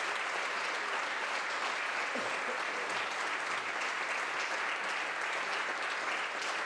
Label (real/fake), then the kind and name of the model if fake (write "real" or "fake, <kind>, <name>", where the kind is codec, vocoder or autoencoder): real